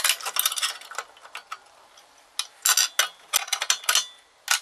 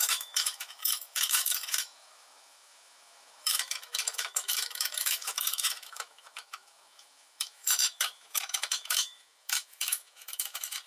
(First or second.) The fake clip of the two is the second